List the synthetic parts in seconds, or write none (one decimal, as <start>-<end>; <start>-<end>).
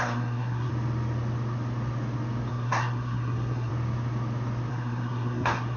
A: 0.0-0.7; 2.5-3.7; 4.7-5.8